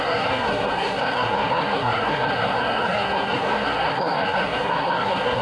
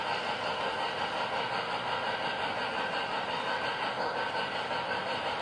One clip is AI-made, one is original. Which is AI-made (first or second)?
first